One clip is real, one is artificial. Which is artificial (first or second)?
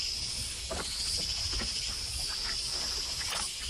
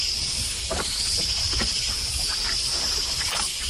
second